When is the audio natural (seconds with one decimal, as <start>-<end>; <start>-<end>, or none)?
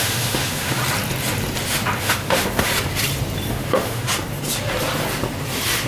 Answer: 0.8-2.0; 2.7-3.5; 4.1-5.9